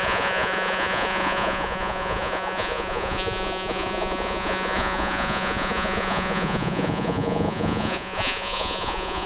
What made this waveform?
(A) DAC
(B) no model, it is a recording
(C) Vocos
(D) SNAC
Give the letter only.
C